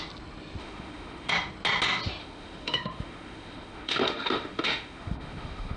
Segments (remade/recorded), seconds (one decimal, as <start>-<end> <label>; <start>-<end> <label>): 0.0-0.6 recorded; 0.6-1.3 remade; 1.3-2.2 recorded; 2.2-5.8 remade